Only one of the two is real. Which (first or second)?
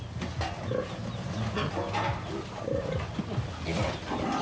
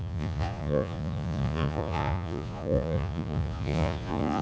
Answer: first